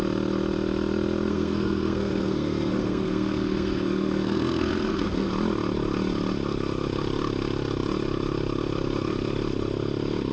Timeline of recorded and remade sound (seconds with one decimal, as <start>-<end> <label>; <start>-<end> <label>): 0.0-1.3 recorded; 1.3-5.3 remade; 5.3-10.3 recorded